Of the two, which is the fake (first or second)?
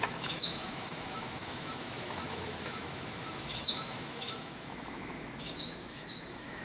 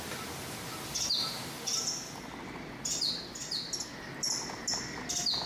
first